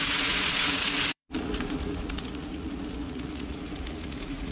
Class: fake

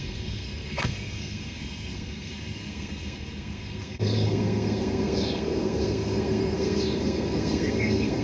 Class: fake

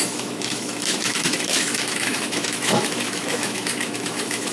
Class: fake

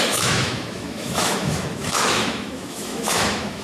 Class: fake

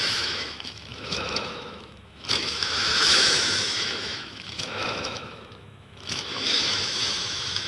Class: fake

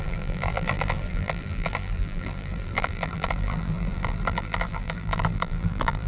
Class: fake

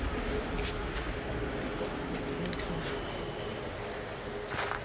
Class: real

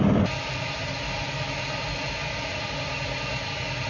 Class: real